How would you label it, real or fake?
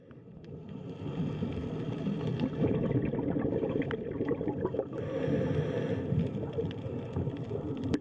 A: real